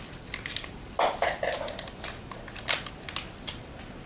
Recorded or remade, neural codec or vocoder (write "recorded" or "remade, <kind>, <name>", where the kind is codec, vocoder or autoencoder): recorded